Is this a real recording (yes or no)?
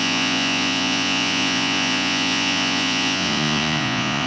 no